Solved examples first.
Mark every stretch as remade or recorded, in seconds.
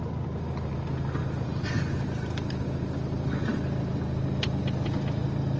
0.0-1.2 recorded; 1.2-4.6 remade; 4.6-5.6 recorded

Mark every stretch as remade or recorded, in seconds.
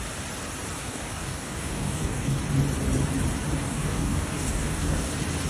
0.0-0.8 recorded; 0.8-2.4 remade; 2.4-3.6 recorded; 3.6-5.1 remade; 5.1-5.5 recorded